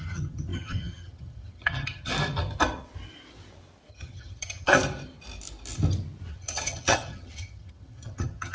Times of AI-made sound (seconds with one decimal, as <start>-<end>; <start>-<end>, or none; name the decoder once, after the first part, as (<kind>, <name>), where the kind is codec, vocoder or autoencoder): 0.0-2.1 (vocoder, HiFi-GAN); 3.9-4.7; 6.3-8.5